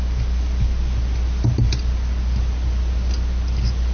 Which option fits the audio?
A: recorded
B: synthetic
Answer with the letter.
A